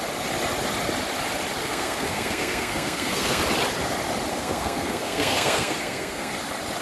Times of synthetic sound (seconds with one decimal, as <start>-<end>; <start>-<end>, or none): 1.6-3.4; 4.3-6.3